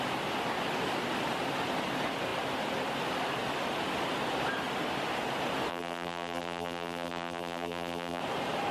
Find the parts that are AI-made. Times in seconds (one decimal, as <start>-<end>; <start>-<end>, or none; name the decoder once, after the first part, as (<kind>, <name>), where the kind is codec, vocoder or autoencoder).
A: 5.7-8.2 (vocoder, BigVGAN v2)